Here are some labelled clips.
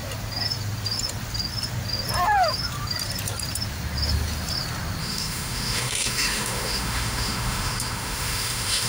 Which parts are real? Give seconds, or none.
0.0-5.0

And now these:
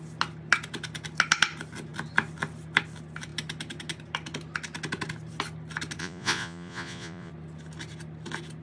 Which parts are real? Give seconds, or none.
0.0-6.0; 7.3-8.6

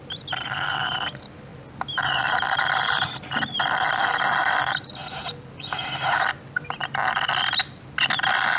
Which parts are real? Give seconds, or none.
0.0-8.6

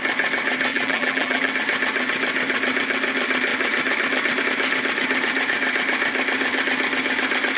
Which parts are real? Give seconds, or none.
0.0-0.7; 1.5-7.6

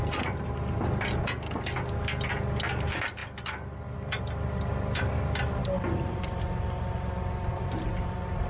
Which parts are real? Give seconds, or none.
0.0-8.5

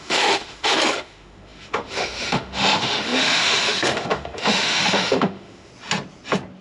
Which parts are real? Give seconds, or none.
5.7-6.6

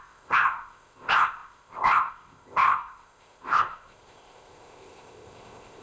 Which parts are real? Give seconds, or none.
none

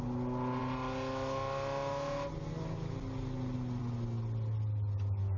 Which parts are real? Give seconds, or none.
0.0-5.4